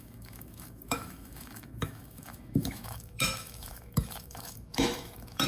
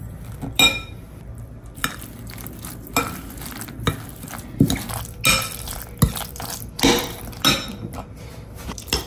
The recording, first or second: second